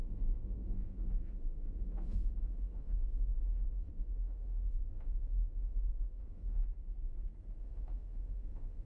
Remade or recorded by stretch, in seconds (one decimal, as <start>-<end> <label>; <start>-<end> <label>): 0.0-6.6 remade; 6.6-7.6 recorded; 7.6-8.9 remade